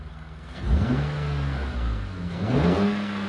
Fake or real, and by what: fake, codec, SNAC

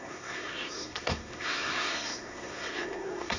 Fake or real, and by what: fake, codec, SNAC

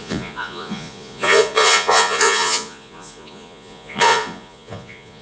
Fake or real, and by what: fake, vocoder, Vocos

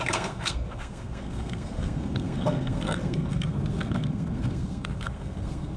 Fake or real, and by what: fake, codec, SNAC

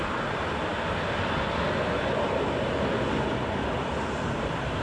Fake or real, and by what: real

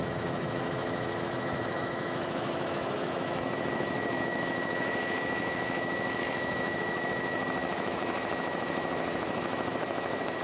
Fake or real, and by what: fake, autoencoder, DAC-VAE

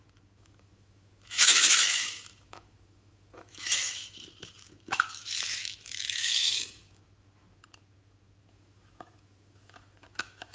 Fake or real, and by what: fake, autoencoder, DAC-VAE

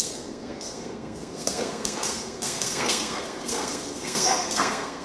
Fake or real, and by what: fake, codec, SNAC